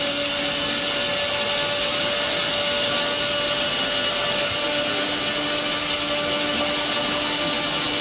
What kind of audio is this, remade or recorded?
recorded